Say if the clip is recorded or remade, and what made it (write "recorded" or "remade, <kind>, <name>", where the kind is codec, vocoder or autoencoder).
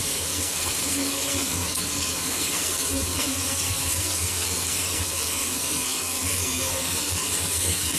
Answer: remade, codec, SNAC